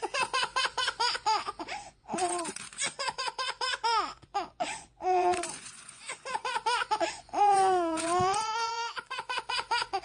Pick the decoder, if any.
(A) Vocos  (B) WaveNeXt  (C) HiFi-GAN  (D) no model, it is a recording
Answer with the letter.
A